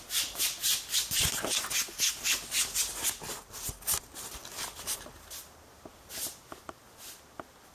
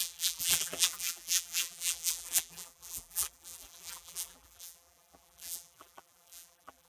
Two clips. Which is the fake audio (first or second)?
second